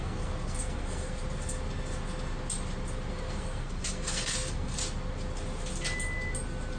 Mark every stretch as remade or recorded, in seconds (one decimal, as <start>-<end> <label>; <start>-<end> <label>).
0.0-1.2 remade; 1.2-3.1 recorded; 3.1-4.8 remade; 4.8-6.8 recorded